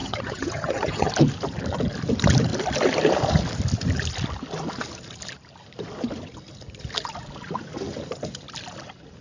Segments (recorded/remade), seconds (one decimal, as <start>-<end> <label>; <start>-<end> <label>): 0.0-1.1 remade; 1.1-9.2 recorded